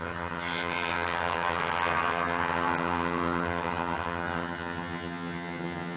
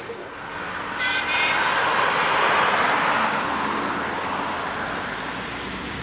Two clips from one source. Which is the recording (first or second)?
second